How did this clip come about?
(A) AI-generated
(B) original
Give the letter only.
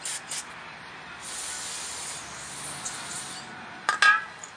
B